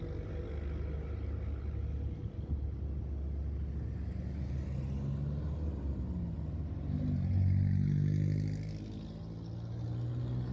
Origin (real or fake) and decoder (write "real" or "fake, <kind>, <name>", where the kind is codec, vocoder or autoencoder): real